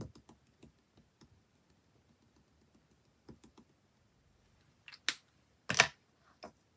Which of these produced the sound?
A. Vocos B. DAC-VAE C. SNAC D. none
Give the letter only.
D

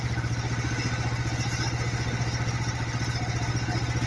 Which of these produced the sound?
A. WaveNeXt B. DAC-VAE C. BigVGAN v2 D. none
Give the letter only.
D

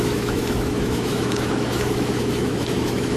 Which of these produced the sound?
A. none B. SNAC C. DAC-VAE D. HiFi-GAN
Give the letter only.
C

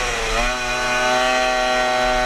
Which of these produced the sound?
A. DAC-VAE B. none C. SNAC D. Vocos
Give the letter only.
B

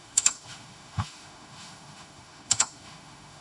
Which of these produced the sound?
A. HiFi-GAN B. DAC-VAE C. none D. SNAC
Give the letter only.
B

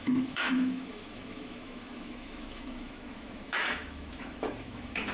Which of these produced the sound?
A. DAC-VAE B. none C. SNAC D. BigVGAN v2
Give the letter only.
A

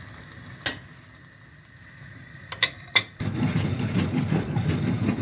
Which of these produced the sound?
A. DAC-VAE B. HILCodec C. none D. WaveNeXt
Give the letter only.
C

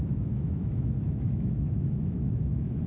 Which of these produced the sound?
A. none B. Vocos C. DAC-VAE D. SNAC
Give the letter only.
C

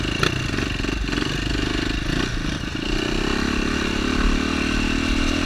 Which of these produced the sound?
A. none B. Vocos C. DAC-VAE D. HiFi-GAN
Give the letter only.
A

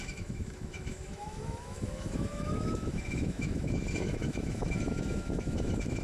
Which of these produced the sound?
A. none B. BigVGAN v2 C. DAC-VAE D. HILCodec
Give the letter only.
C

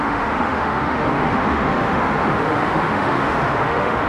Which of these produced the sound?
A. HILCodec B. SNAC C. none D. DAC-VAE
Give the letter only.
D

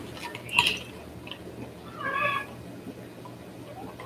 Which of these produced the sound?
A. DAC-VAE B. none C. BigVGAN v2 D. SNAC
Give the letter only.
B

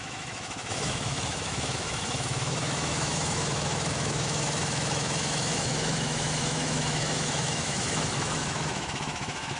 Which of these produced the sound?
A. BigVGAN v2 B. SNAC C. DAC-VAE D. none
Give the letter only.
C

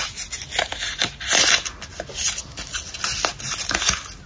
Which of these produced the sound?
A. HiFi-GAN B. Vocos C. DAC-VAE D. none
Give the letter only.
D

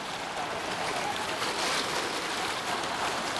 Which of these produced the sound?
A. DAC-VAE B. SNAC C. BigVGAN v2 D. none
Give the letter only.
D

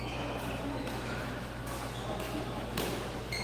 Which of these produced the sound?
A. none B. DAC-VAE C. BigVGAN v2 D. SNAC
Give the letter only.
B